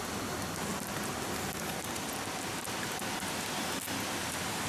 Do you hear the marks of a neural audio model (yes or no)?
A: no